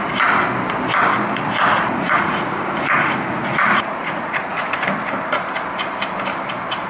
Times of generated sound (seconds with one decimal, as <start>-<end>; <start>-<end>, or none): 1.7-4.6